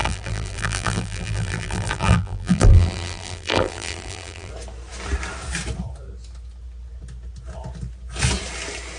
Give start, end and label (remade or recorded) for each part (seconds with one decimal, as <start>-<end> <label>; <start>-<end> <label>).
0.0-4.5 remade; 4.5-9.0 recorded